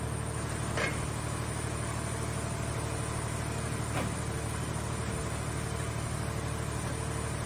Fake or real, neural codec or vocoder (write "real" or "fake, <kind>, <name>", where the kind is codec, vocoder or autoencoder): real